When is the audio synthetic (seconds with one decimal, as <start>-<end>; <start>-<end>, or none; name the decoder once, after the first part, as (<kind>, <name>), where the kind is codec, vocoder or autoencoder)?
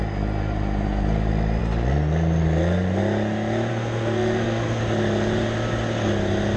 3.7-4.8 (codec, SNAC)